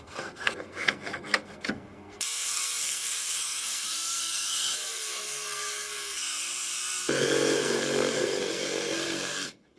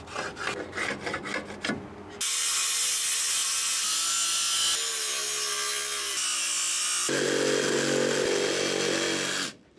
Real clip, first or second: second